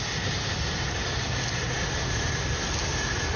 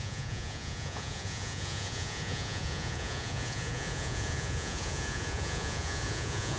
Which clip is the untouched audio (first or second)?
first